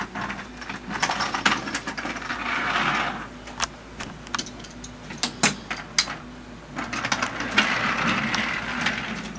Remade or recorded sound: recorded